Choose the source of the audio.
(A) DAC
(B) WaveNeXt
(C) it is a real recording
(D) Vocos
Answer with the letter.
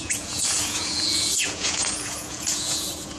D